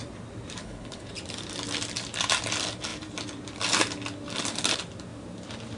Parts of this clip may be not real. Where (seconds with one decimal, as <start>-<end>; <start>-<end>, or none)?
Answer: 0.6-1.1